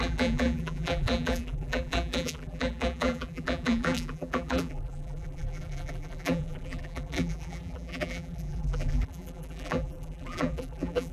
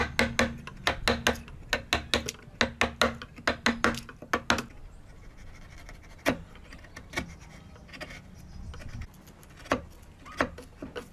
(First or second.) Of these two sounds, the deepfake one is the first